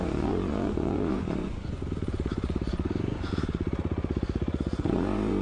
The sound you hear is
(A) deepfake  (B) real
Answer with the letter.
A